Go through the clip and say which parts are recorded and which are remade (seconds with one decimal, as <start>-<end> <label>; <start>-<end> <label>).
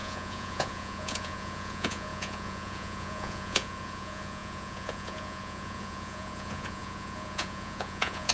0.0-8.3 remade